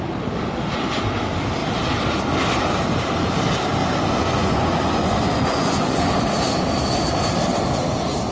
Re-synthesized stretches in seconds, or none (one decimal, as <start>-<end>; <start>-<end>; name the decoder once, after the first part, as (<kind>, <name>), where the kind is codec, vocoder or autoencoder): 3.8-6.2 (vocoder, Vocos)